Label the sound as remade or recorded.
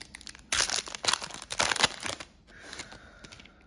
recorded